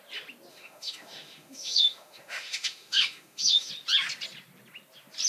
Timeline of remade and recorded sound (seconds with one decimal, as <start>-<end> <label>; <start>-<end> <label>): 0.0-0.5 recorded; 0.5-3.7 remade; 3.7-5.3 recorded